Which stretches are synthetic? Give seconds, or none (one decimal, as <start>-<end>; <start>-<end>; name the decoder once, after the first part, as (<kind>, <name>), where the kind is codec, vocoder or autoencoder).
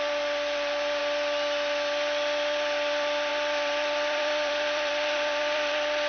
0.0-1.0 (vocoder, BigVGAN v2); 3.3-6.1